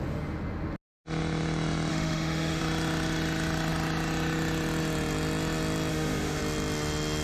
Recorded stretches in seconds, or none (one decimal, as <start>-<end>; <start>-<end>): 0.0-1.9; 2.6-5.9; 6.4-7.2